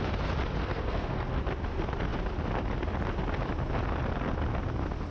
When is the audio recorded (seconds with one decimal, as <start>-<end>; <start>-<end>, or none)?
0.0-0.6; 1.4-5.1